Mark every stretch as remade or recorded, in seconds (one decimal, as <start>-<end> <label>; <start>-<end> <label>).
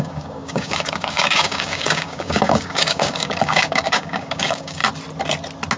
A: 0.0-4.8 remade; 4.8-5.8 recorded